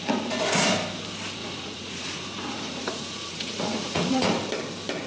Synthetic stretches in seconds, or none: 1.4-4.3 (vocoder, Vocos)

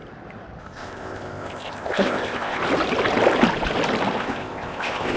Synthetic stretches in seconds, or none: 0.6-2.6 (codec, ZipCodec); 4.2-5.2

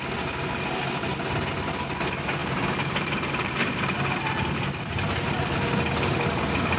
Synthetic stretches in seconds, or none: 2.4-4.2 (vocoder, BigVGAN v2)

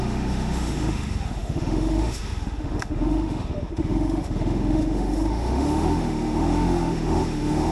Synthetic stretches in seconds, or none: 0.0-7.7 (autoencoder, DAC-VAE)

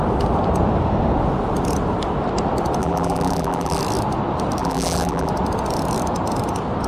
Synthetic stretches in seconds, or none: 2.8-3.8 (vocoder, BigVGAN v2); 4.6-5.3

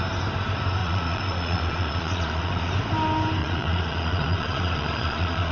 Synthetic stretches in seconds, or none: 0.8-2.7 (vocoder, Vocos); 3.4-5.5

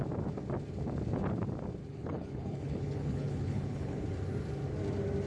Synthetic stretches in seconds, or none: 1.8-4.0 (codec, HILCodec)

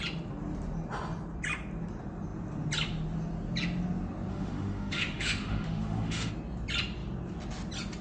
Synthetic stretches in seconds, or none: 4.3-6.3 (autoencoder, DAC-VAE)